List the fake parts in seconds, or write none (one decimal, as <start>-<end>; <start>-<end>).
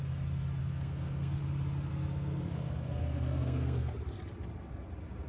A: 0.6-1.4; 1.9-3.9